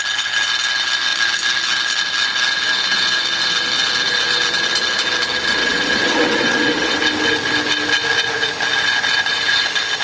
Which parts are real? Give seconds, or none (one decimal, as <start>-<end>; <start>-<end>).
0.0-5.6; 7.0-10.0